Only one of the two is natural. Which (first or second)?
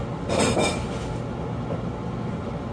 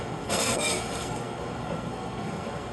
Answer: first